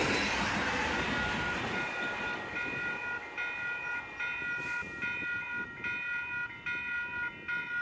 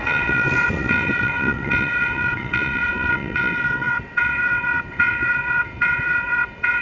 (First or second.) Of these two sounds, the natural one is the first